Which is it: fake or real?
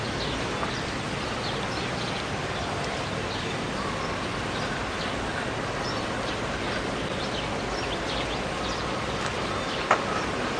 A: real